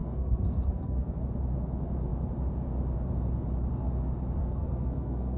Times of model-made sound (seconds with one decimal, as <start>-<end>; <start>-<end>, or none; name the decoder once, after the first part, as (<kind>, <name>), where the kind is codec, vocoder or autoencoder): 0.0-1.2 (codec, SNAC); 4.4-5.4